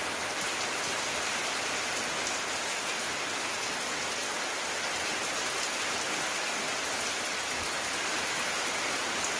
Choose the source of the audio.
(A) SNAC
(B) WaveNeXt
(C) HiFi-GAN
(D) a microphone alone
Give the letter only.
D